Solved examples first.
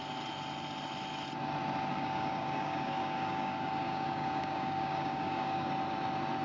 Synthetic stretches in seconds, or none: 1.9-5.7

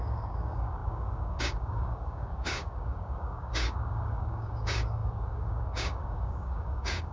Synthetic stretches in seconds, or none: 0.0-7.1